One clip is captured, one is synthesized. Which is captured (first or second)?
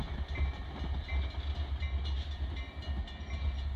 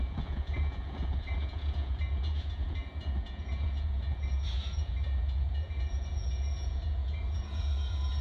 first